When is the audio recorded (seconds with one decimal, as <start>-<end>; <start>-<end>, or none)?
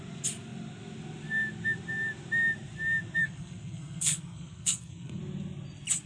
0.0-3.2; 5.2-6.1